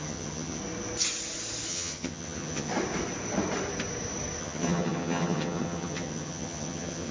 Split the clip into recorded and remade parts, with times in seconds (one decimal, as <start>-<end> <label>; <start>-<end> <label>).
0.0-0.6 remade; 0.6-1.7 recorded; 1.7-2.7 remade; 2.7-4.4 recorded; 4.4-7.1 remade